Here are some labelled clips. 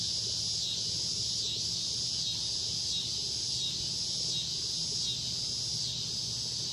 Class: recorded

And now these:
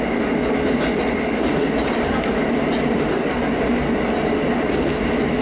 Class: recorded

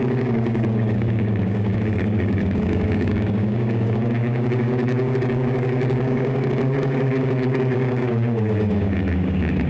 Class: remade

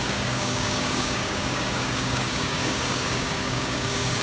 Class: remade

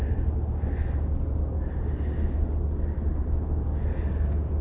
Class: recorded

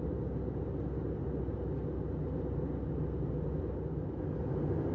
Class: recorded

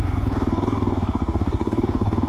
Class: remade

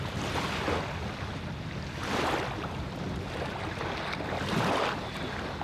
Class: recorded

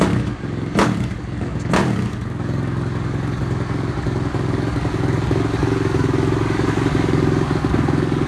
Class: remade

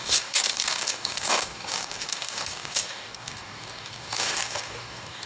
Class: remade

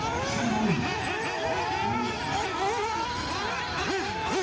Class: recorded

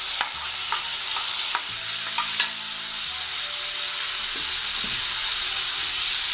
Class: recorded